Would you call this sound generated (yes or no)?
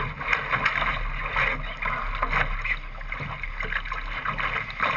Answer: no